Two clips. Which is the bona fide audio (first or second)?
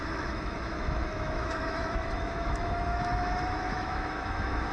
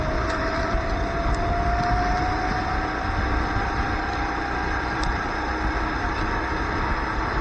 second